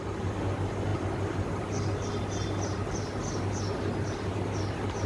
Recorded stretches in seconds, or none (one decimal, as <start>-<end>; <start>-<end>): 0.0-5.1